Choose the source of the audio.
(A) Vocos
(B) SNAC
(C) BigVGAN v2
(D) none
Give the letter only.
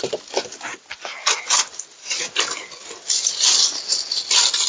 D